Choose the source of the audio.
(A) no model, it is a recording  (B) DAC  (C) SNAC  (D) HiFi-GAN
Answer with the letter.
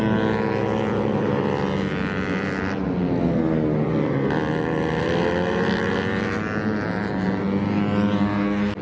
A